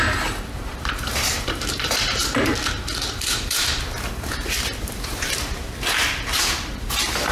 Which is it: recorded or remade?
remade